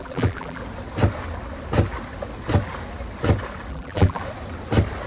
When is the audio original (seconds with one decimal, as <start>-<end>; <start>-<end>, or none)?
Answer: 0.6-3.7; 4.2-5.1

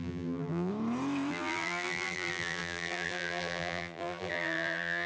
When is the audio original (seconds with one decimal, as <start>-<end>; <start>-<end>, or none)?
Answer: 0.7-1.3